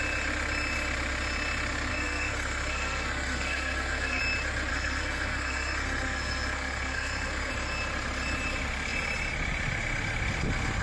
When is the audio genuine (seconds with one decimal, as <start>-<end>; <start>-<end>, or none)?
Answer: 0.0-1.9; 4.2-4.7; 7.5-10.8